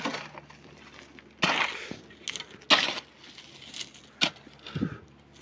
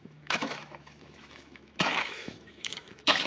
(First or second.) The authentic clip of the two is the first